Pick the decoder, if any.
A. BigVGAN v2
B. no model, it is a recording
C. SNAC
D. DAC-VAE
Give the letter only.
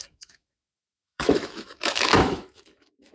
D